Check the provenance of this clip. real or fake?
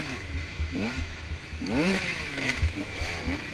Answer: fake